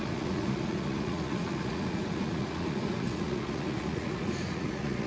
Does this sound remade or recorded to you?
remade